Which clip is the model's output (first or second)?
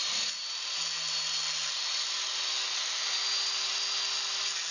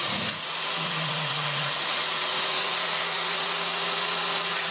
second